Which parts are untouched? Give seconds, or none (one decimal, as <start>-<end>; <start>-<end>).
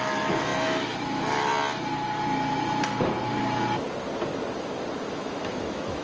1.5-5.1